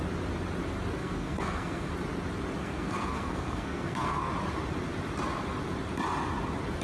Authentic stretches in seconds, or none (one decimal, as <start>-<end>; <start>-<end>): 0.0-1.0; 1.9-2.6; 4.3-6.8